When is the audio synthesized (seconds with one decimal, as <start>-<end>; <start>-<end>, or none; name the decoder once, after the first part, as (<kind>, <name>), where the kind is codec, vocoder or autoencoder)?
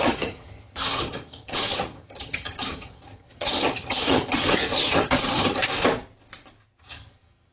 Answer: 0.0-5.6 (vocoder, HiFi-GAN); 6.8-7.5